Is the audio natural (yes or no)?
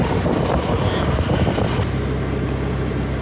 yes